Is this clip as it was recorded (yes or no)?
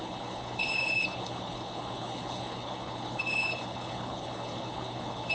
no